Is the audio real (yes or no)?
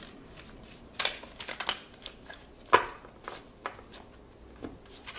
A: yes